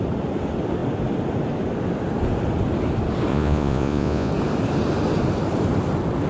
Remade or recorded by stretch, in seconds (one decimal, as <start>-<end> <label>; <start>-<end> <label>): 0.0-3.3 recorded; 3.3-4.3 remade; 4.3-6.3 recorded